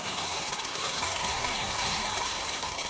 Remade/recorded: remade